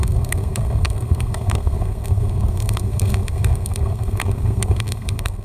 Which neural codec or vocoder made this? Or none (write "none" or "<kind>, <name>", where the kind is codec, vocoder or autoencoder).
codec, SNAC